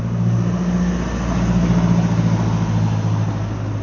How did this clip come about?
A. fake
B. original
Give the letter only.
B